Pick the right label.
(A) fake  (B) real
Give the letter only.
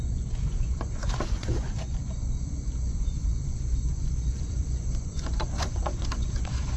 A